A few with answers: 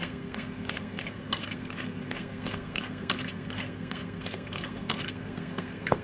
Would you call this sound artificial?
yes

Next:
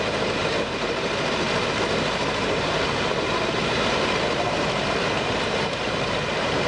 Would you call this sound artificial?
yes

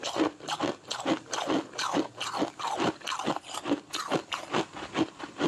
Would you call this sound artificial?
no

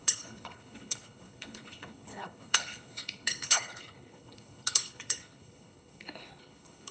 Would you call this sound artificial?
yes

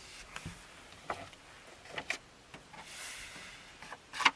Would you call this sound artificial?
no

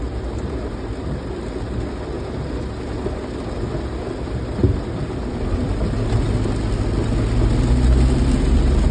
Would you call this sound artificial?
no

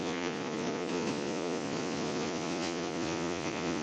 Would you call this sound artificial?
yes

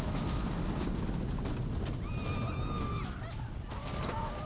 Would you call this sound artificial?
no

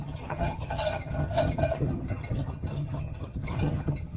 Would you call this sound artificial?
yes